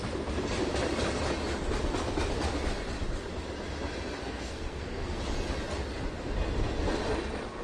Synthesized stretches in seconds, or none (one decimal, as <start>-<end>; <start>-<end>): 4.2-5.2